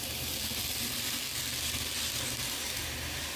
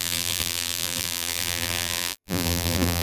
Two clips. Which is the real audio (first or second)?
first